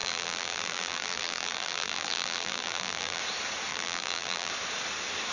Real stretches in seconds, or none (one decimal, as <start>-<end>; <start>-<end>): 3.2-3.7; 4.5-5.3